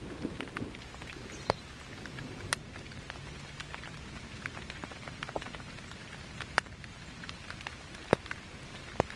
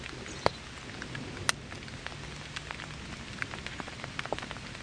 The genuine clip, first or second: second